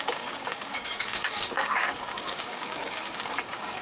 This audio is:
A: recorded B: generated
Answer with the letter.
B